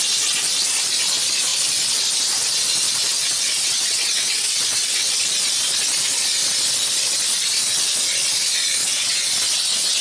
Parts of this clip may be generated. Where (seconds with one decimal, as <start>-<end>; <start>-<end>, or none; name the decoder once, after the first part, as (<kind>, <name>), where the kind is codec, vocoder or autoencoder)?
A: 3.1-5.2 (vocoder, WaveNeXt); 8.8-9.3